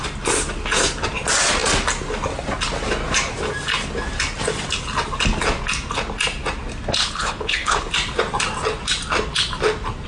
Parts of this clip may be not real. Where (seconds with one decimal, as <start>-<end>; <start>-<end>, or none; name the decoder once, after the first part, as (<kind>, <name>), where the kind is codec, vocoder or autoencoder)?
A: 7.0-7.9 (codec, HILCodec)